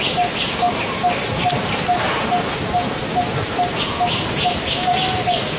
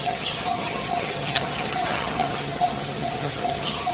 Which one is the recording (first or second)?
first